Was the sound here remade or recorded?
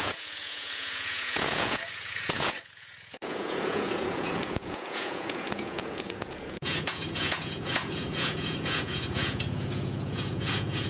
remade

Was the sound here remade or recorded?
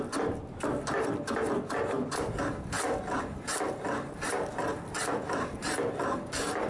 recorded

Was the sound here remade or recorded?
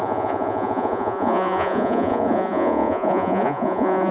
remade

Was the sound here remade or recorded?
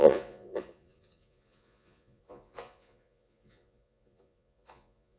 remade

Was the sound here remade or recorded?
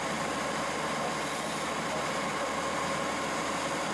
recorded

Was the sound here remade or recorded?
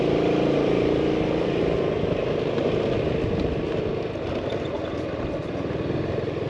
recorded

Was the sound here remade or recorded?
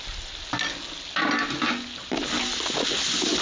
recorded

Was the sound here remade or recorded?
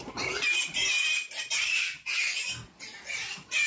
recorded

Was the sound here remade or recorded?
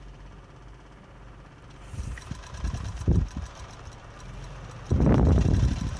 recorded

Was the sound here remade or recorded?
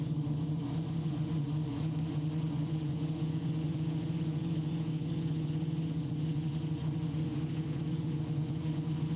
remade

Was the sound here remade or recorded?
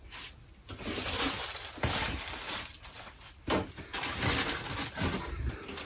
recorded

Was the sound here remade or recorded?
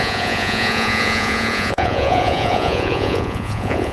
remade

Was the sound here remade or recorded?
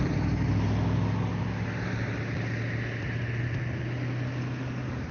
recorded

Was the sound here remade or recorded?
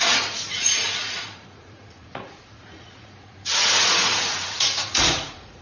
remade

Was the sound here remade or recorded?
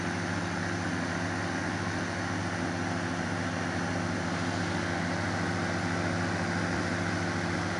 recorded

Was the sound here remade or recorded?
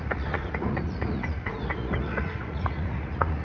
remade